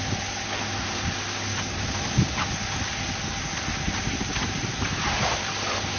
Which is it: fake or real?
real